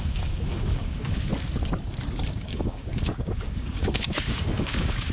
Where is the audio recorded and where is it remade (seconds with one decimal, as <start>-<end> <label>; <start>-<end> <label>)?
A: 0.0-1.3 remade; 1.3-2.3 recorded; 2.3-5.1 remade